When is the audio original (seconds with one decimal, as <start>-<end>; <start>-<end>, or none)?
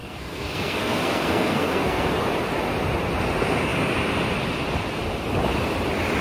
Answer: 2.1-6.2